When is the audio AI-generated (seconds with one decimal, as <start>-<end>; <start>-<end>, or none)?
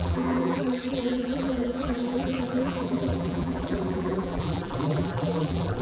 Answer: 0.0-5.8